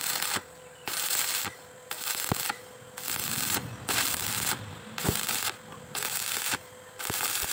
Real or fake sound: fake